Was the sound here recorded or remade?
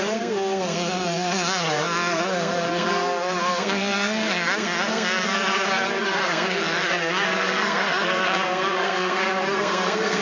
remade